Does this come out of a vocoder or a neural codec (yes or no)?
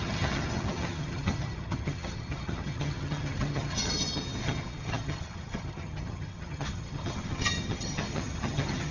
yes